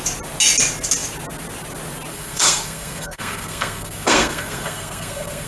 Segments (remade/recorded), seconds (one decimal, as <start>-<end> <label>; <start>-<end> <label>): 0.0-2.1 recorded; 2.1-5.5 remade